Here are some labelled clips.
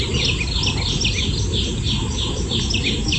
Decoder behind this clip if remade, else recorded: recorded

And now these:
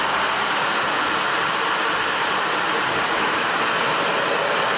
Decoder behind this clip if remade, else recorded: recorded